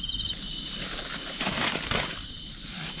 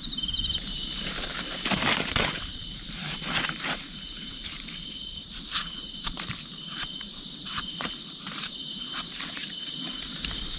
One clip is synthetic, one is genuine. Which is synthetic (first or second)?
second